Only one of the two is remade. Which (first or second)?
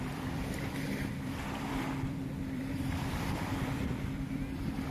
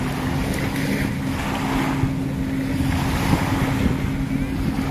first